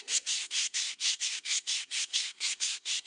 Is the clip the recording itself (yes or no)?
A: no